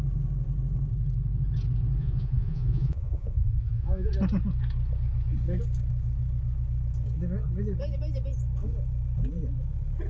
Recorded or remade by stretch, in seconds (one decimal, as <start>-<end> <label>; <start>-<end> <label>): 0.0-2.0 recorded; 2.0-4.1 remade; 4.1-10.1 recorded